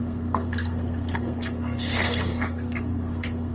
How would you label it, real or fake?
fake